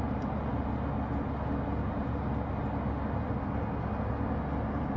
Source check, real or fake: real